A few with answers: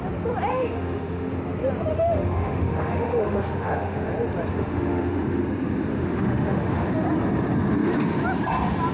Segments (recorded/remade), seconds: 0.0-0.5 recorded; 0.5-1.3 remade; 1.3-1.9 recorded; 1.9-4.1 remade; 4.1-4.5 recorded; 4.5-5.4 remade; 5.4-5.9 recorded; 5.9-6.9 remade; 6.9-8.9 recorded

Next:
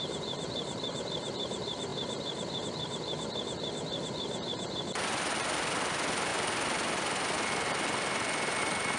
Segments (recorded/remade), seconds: 0.0-9.0 recorded

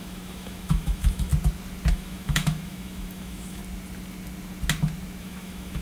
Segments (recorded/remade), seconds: 0.0-1.3 remade; 1.3-1.9 recorded; 1.9-3.6 remade; 3.6-5.2 recorded; 5.2-5.8 remade

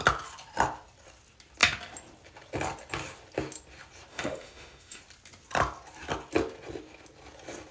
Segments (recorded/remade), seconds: 0.0-4.1 recorded; 4.1-5.0 remade; 5.0-7.7 recorded

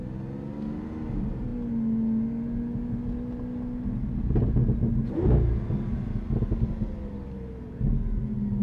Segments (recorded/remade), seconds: 0.0-8.6 recorded